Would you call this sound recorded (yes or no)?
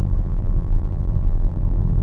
no